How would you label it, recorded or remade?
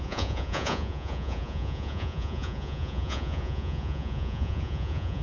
remade